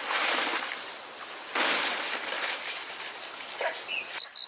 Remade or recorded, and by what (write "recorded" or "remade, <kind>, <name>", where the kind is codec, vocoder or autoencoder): recorded